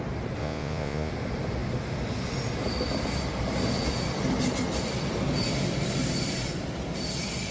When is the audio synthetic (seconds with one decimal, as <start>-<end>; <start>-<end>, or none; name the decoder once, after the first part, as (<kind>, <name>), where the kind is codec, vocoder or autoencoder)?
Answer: 0.4-1.1 (vocoder, Vocos)

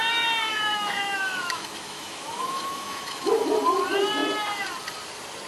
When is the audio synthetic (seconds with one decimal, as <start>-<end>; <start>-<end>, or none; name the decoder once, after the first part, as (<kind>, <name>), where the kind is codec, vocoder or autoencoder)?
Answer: 0.5-3.3 (autoencoder, DAC-VAE)

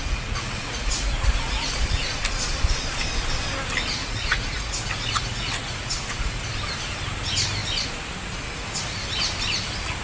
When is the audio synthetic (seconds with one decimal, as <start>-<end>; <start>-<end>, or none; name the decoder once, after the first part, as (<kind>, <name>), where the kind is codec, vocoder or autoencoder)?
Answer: 0.0-2.2 (vocoder, Vocos); 4.0-6.4

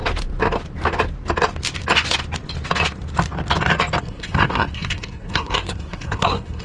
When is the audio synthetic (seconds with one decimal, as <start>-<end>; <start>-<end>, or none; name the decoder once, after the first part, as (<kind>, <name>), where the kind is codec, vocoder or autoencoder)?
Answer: 4.0-6.6 (codec, SNAC)